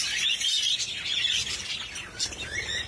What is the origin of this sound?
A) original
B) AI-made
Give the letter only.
A